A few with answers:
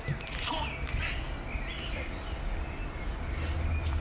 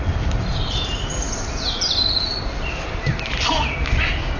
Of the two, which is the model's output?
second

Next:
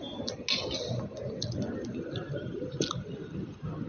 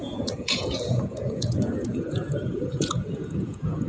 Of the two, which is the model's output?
second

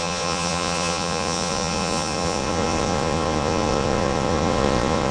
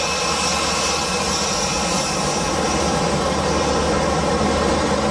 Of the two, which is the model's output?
first